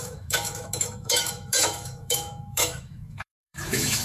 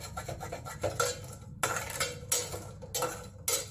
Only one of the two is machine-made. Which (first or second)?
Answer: first